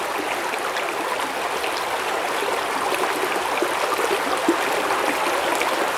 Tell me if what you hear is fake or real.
real